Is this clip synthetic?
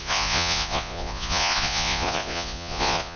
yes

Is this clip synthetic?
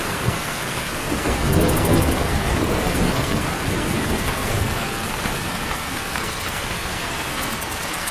yes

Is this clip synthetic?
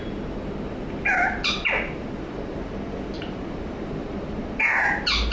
no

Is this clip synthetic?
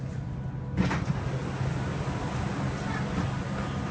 no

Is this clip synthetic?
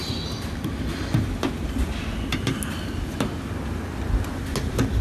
no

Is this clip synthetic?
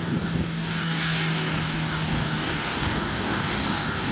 yes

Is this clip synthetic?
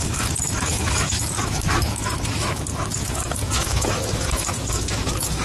yes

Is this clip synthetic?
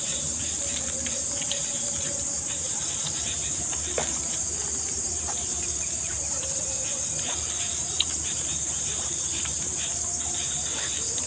yes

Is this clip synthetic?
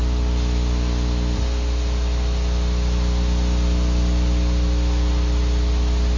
no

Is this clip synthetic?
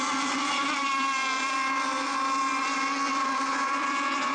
yes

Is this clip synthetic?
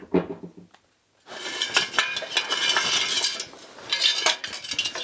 no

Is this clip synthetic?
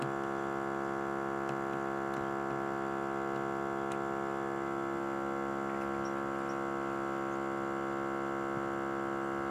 no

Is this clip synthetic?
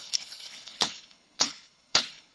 yes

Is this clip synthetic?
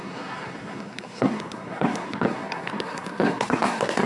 yes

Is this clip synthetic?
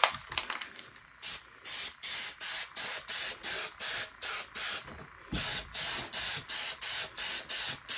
no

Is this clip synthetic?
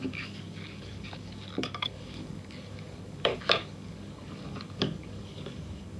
yes